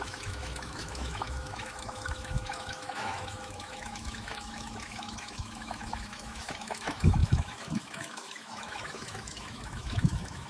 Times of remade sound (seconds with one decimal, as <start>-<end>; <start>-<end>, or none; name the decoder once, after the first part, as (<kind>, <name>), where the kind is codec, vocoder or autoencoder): 0.0-10.5 (autoencoder, DAC-VAE)